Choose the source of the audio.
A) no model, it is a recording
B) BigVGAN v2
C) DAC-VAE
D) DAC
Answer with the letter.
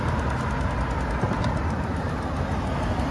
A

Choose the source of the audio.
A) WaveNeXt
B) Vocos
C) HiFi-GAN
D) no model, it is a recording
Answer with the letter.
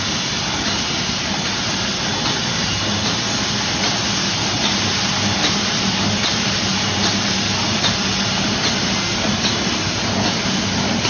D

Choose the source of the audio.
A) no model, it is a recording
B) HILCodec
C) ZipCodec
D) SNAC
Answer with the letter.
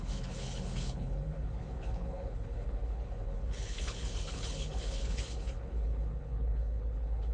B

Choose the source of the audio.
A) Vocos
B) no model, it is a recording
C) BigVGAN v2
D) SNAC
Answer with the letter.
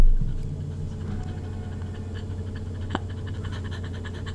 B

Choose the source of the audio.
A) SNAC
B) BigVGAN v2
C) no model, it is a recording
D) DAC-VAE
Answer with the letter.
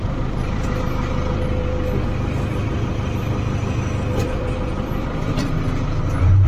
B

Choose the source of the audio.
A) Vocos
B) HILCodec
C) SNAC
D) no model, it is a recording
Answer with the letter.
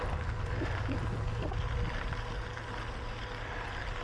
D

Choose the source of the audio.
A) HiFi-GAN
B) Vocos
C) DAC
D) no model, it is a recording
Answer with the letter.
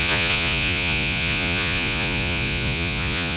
B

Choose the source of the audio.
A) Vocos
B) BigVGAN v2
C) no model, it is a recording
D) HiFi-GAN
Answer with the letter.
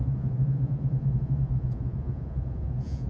A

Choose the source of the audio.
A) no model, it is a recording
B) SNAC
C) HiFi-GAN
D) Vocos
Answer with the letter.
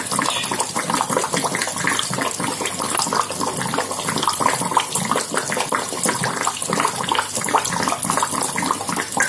A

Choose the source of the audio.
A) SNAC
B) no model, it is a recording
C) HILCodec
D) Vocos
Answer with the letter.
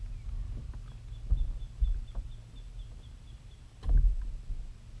B